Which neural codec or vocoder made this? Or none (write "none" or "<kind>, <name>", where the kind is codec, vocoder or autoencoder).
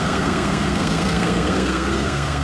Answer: codec, SNAC